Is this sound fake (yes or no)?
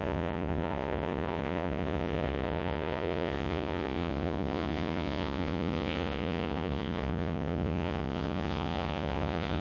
yes